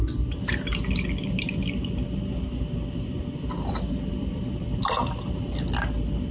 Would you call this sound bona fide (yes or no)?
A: yes